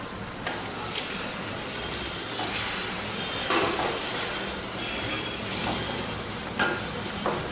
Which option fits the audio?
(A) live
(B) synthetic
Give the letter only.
A